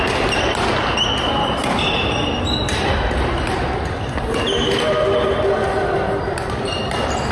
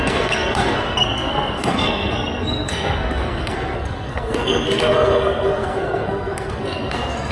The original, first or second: first